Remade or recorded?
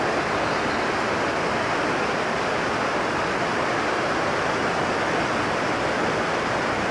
recorded